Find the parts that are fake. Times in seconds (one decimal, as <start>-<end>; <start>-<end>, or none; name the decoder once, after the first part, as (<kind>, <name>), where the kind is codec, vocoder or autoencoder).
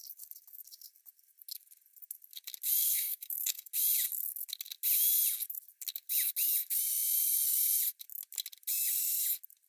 2.8-3.7 (codec, SNAC)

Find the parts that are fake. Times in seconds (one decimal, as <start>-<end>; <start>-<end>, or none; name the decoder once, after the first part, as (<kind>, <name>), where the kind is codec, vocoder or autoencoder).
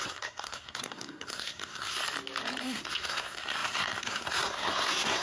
0.0-2.0 (codec, SNAC); 2.6-5.2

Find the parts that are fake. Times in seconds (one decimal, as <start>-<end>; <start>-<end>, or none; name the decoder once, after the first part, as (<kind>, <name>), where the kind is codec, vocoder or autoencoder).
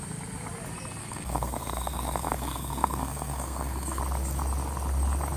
1.0-4.0 (codec, SNAC)